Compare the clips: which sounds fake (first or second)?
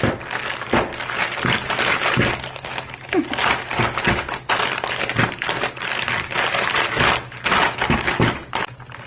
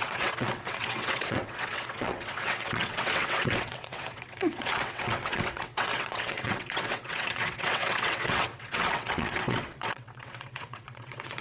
second